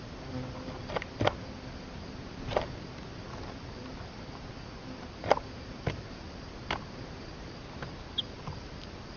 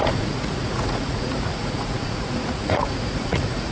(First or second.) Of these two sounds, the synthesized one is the second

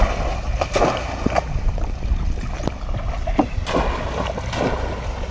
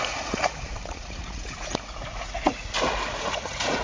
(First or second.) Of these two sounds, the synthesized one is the second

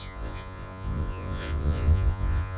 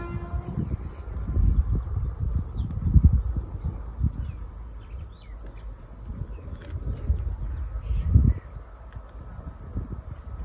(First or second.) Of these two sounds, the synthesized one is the first